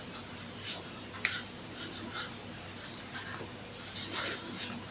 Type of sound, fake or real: fake